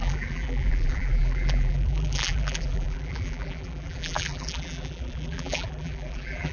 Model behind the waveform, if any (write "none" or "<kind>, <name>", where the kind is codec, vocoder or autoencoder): vocoder, BigVGAN v2